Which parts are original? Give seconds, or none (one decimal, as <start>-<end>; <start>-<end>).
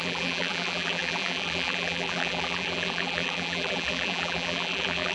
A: none